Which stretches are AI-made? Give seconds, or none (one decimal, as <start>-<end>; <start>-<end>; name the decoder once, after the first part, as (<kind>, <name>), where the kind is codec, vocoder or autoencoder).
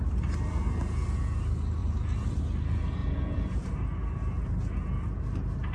1.8-2.4 (vocoder, BigVGAN v2); 3.0-3.7